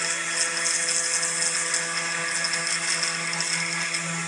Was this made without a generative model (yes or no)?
yes